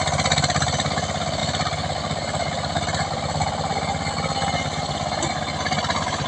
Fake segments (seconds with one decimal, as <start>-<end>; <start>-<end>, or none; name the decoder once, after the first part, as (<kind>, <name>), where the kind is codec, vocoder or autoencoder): none